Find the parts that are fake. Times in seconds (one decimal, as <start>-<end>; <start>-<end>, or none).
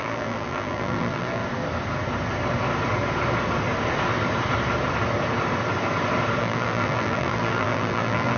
0.0-1.4; 6.4-8.4